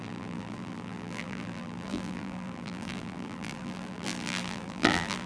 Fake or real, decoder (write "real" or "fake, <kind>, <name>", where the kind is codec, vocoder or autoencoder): fake, vocoder, BigVGAN v2